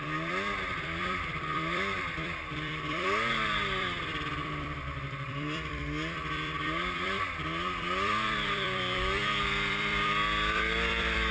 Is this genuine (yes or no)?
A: no